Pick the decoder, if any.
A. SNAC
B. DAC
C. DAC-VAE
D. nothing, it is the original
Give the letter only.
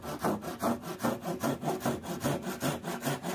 D